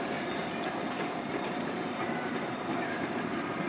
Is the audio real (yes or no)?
no